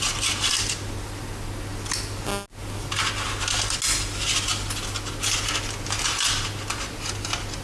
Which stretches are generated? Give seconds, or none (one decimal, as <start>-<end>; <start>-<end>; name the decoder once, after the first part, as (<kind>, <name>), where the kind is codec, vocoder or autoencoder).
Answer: none